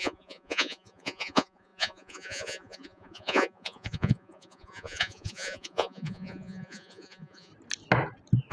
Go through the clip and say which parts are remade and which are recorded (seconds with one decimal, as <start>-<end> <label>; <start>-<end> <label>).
0.0-7.5 remade; 7.5-8.5 recorded